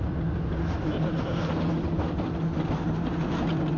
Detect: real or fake real